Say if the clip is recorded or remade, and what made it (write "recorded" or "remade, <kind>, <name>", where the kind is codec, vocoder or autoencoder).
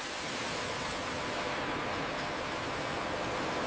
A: recorded